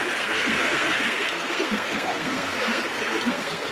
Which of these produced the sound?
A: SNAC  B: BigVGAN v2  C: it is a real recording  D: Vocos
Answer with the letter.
A